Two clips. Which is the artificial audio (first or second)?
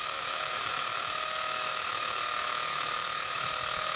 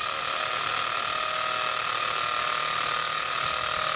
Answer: first